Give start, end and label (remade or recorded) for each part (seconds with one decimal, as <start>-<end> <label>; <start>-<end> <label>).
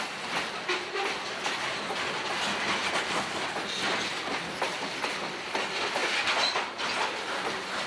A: 0.0-7.9 recorded